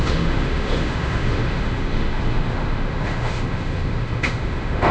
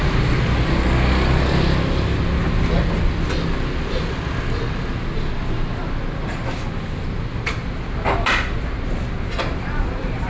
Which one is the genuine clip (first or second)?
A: second